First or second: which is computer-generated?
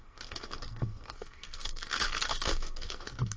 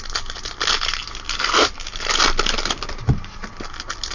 first